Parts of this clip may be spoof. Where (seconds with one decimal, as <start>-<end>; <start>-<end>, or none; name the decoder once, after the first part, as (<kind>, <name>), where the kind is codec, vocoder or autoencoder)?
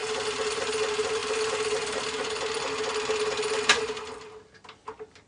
none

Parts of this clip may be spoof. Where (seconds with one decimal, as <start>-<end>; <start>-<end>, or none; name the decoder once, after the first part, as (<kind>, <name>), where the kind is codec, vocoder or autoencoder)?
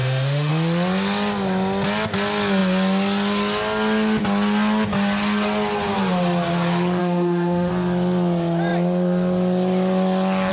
0.0-0.5 (autoencoder, DAC-VAE); 7.0-7.7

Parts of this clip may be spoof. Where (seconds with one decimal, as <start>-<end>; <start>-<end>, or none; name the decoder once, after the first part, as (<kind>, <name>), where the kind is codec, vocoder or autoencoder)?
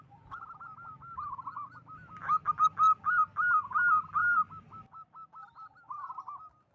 none